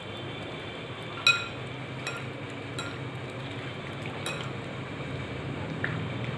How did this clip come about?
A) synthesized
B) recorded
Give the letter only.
B